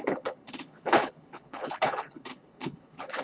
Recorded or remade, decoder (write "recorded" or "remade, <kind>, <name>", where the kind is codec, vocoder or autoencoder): remade, codec, HILCodec